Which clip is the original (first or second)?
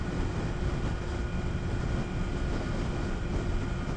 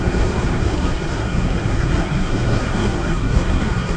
first